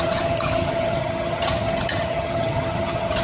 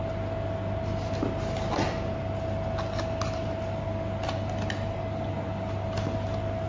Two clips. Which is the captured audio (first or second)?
second